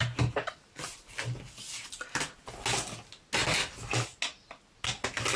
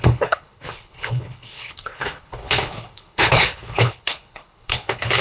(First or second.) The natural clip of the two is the first